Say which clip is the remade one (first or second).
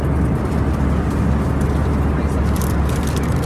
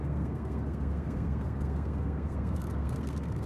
second